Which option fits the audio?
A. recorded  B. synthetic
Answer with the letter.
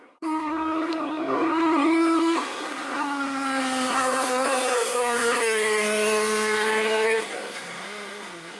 B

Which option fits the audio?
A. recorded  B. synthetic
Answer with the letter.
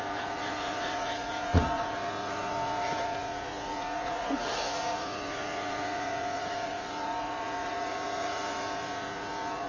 B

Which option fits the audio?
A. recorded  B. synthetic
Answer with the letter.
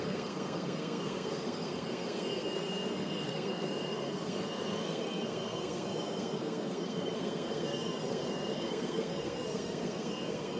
B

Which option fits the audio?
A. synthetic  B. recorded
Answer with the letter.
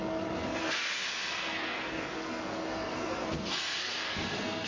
A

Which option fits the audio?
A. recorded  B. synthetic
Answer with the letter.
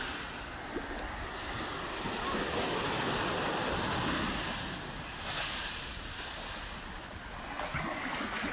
A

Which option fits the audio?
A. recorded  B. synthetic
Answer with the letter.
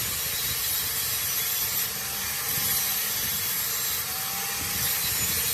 A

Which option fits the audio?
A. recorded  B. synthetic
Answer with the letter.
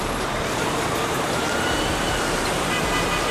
B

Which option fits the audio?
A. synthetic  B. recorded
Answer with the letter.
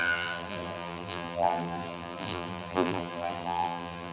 A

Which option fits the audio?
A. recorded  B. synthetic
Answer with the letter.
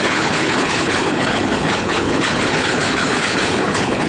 B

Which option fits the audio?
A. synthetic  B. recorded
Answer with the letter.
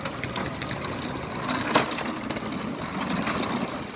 B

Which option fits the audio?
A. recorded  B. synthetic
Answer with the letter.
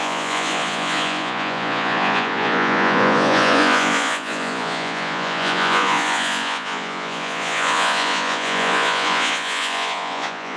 B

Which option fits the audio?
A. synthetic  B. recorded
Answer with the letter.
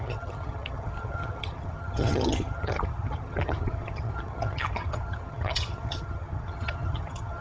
A